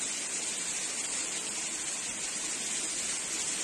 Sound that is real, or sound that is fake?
real